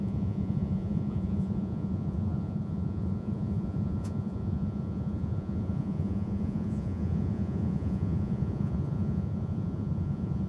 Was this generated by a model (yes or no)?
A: yes